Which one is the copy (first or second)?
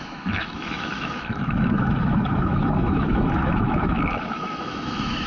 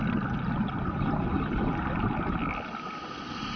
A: first